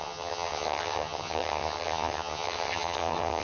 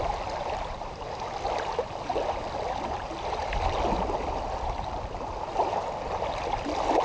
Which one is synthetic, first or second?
first